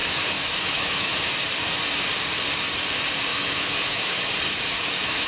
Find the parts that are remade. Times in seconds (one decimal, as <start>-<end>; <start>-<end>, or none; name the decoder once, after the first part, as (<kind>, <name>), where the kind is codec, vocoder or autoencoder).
0.0-1.3 (autoencoder, DAC-VAE); 3.3-4.3; 4.7-5.3